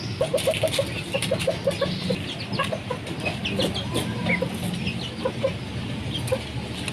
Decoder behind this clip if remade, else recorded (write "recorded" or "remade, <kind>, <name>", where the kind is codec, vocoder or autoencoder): recorded